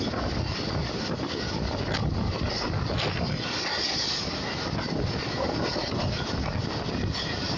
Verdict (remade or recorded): recorded